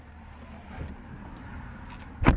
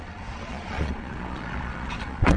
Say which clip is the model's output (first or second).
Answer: second